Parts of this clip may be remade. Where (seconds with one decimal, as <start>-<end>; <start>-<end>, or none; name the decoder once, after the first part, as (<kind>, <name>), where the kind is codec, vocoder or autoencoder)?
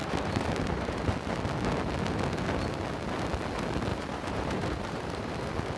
0.0-1.1 (vocoder, BigVGAN v2); 3.9-5.3